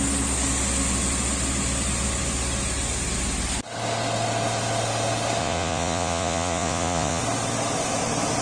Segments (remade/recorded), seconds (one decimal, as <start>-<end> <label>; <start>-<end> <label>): 0.0-5.4 recorded; 5.4-7.2 remade; 7.2-8.4 recorded